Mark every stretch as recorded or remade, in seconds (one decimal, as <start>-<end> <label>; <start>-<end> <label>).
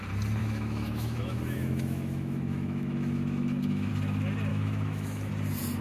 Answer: 0.0-0.4 recorded; 0.4-3.9 remade; 3.9-4.5 recorded; 4.5-5.3 remade; 5.3-5.8 recorded